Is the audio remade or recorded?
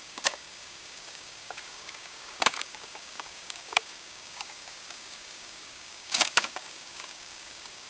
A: remade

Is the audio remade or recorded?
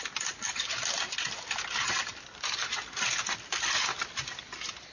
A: recorded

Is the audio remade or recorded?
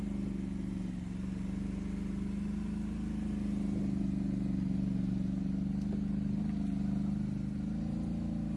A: recorded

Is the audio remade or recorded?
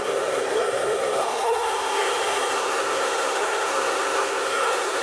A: remade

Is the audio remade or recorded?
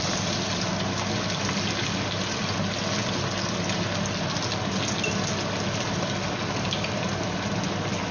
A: recorded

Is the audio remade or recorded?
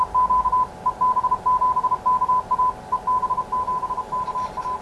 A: recorded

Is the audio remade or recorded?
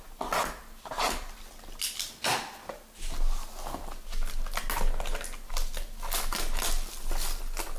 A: recorded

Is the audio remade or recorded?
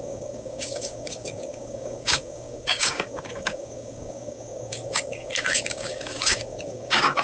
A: remade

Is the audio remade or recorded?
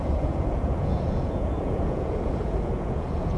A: remade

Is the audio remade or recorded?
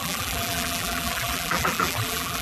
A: remade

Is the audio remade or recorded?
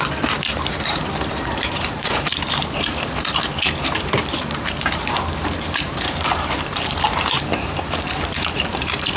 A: remade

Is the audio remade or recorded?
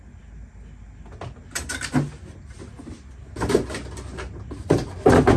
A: recorded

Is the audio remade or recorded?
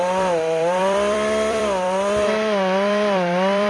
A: remade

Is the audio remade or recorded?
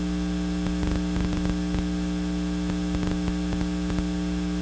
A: recorded